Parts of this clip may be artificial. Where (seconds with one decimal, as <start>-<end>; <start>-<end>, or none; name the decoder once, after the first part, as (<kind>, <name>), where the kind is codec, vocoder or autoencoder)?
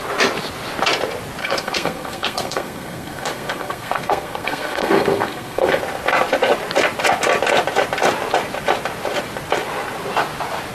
1.4-5.8 (codec, SNAC)